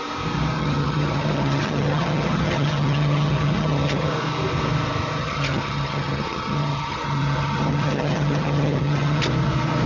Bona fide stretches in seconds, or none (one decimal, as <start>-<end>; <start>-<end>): 0.0-0.6; 4.1-5.2; 9.2-9.9